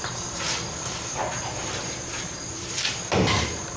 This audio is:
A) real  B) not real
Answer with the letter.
B